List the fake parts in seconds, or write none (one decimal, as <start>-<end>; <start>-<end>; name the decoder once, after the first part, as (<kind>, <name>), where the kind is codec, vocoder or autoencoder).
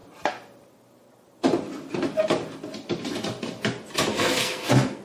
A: 4.1-5.0 (codec, SNAC)